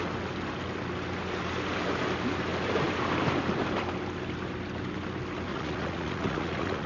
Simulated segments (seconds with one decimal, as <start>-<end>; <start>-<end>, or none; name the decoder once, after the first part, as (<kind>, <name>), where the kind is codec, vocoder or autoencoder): 5.5-6.9 (vocoder, Vocos)